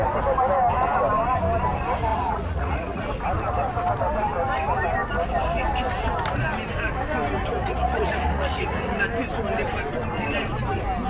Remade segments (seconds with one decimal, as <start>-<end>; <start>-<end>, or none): 2.1-3.1; 7.5-9.0